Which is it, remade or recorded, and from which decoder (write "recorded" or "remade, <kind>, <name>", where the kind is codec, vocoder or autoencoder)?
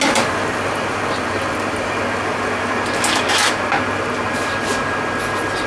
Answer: recorded